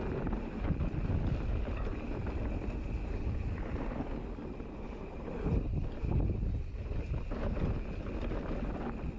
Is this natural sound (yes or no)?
yes